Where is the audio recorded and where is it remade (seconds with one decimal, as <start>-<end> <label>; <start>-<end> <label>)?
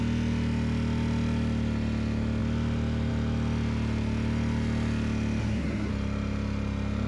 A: 0.0-5.4 recorded; 5.4-5.9 remade; 5.9-7.1 recorded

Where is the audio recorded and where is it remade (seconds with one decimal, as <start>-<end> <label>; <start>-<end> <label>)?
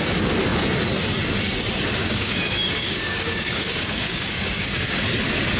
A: 0.0-2.0 recorded; 2.0-5.0 remade; 5.0-5.6 recorded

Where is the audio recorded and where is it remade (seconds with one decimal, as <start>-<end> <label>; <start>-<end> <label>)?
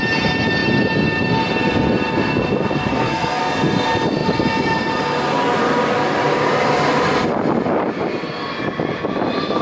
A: 0.0-2.9 recorded; 2.9-3.4 remade; 3.4-9.6 recorded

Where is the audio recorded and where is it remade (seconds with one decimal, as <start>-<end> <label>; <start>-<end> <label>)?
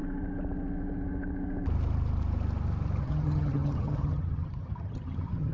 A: 0.0-3.0 recorded; 3.0-5.5 remade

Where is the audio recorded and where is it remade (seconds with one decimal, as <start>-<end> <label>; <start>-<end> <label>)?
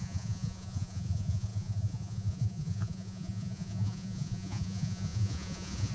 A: 0.0-5.9 remade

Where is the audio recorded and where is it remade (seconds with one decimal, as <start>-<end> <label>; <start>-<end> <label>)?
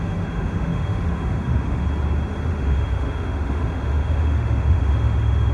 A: 0.0-1.8 remade; 1.8-2.5 recorded; 2.5-5.5 remade